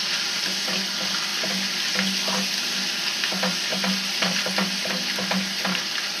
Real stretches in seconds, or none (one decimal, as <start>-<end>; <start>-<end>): 0.0-6.2